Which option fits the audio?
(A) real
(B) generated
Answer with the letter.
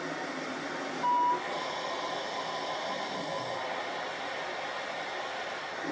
A